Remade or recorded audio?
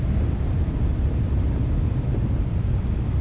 recorded